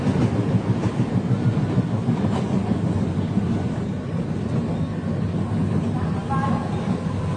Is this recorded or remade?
recorded